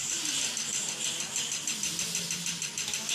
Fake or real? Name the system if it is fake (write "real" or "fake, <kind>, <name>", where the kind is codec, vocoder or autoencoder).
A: real